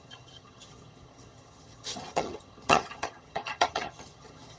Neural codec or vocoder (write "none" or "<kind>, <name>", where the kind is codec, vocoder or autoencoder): vocoder, HiFi-GAN